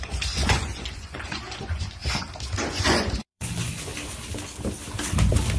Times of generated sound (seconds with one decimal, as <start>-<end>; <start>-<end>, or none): 0.0-2.0; 2.7-3.9